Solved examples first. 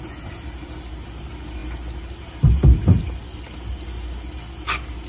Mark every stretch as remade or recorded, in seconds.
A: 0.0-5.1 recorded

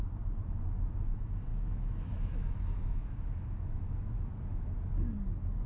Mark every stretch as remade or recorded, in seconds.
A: 0.0-1.5 recorded; 1.5-4.6 remade; 4.6-5.7 recorded

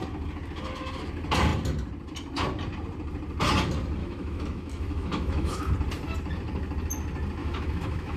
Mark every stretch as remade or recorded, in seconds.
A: 0.0-4.0 recorded; 4.0-5.7 remade; 5.7-7.4 recorded; 7.4-8.2 remade

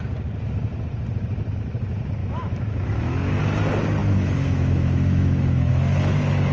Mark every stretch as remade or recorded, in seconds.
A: 0.0-2.2 recorded; 2.2-3.4 remade; 3.4-4.0 recorded; 4.0-5.7 remade; 5.7-6.5 recorded